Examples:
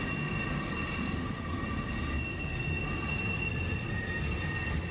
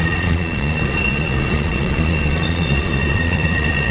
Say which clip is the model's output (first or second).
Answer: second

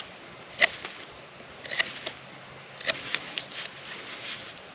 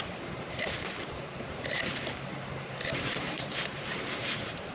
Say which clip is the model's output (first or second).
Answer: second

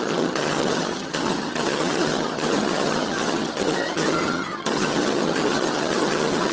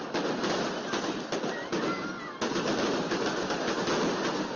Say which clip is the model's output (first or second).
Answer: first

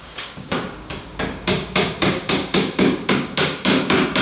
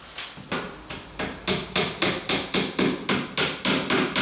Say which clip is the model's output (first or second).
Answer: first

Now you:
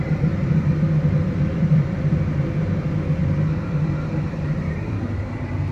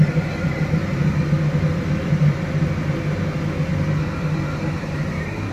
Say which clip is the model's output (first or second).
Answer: first